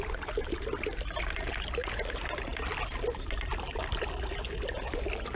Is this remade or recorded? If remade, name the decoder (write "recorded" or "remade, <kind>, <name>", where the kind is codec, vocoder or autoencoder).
recorded